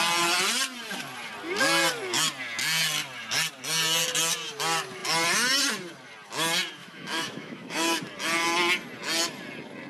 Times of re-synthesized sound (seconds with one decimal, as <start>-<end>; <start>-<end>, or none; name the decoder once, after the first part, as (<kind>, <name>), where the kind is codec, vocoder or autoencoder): 6.8-8.0 (autoencoder, DAC-VAE)